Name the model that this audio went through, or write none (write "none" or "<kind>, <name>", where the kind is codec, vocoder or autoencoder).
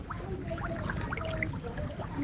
none